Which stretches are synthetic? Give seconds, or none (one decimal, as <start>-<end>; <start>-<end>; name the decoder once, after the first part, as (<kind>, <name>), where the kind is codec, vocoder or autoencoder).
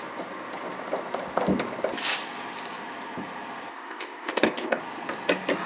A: 3.7-4.8 (codec, ZipCodec)